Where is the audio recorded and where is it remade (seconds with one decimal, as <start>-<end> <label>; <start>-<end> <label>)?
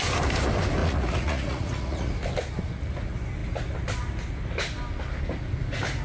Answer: 0.0-0.8 recorded; 0.8-2.1 remade; 2.1-6.0 recorded